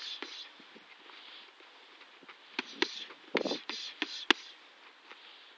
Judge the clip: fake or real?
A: real